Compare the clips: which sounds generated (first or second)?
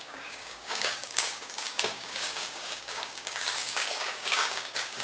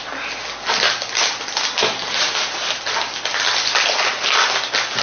first